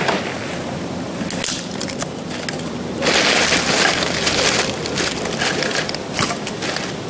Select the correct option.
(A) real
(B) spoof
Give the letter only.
A